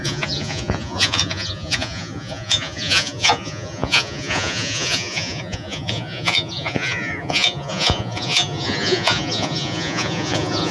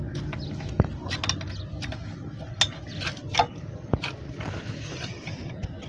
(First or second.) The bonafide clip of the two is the second